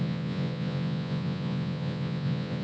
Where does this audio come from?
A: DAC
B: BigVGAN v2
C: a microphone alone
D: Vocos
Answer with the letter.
D